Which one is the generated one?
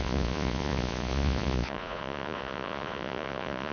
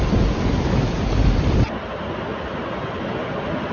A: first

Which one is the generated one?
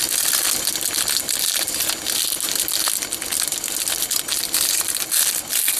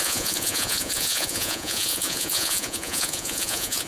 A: second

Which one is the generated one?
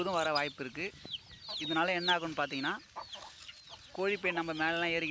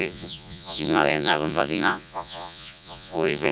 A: second